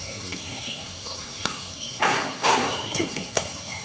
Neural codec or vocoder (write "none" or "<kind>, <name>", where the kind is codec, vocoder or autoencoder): codec, SNAC